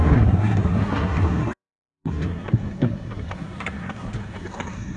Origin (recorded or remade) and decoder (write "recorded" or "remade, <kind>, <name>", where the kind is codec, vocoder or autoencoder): remade, codec, SNAC